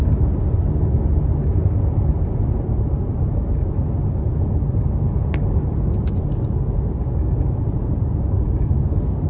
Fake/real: real